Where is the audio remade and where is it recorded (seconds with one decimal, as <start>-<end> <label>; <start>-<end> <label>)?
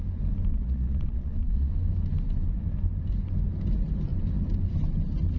0.0-0.5 recorded; 0.5-1.7 remade; 1.7-5.4 recorded